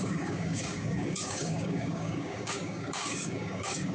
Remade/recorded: remade